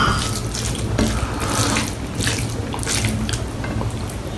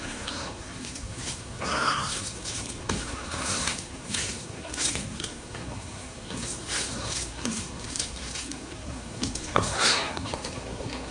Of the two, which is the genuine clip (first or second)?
first